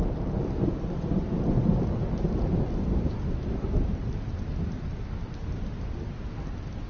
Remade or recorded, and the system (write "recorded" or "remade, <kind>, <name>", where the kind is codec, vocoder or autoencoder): recorded